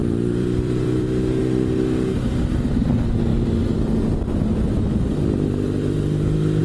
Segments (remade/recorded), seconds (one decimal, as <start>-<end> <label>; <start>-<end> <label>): 0.0-1.4 remade; 1.4-6.6 recorded